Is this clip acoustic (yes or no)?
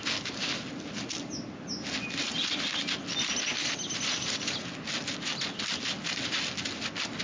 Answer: yes